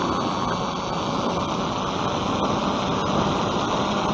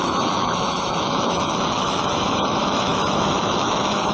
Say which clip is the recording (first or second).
first